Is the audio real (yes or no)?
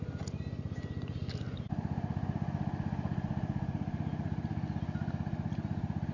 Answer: yes